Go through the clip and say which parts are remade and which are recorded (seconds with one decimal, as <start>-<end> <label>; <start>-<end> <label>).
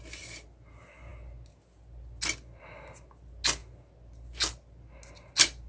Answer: 0.0-5.7 recorded